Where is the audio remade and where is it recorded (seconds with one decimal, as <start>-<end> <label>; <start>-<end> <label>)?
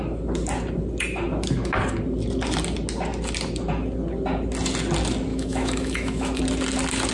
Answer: 0.0-5.3 recorded; 5.3-6.4 remade; 6.4-7.1 recorded